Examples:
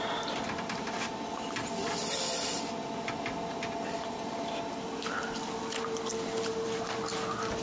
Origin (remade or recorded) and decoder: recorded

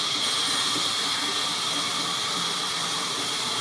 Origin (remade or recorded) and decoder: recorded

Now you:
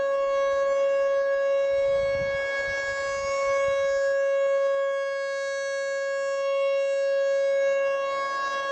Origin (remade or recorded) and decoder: recorded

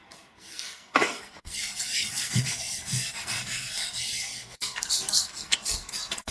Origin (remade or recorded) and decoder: remade, codec, SNAC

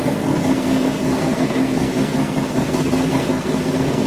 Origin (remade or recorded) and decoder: remade, codec, SNAC